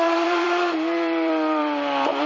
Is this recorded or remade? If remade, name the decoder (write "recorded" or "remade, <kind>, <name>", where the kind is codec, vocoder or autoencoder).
remade, vocoder, BigVGAN v2